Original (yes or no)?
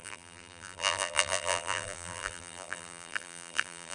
no